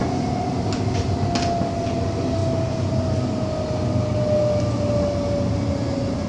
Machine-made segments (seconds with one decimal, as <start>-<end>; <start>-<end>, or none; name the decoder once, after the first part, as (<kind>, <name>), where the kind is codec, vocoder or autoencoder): none